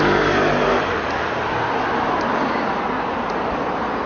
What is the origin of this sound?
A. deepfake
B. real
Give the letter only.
B